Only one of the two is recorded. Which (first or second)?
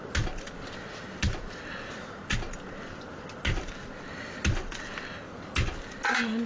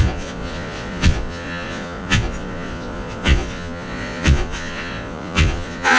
first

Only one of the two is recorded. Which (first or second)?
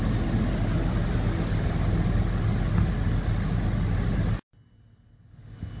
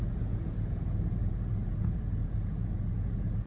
first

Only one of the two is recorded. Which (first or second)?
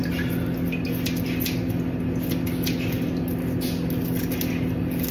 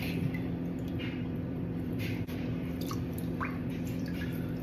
first